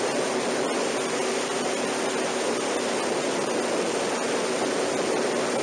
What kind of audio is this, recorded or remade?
recorded